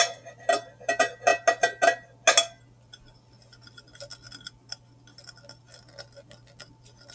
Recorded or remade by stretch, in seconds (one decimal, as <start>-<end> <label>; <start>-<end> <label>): 0.0-7.1 recorded